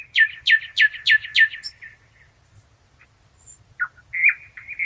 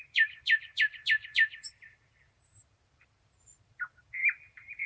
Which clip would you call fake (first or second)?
second